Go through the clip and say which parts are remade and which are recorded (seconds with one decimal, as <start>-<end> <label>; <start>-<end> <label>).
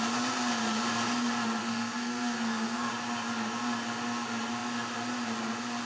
0.0-1.6 recorded; 1.6-2.9 remade; 2.9-5.8 recorded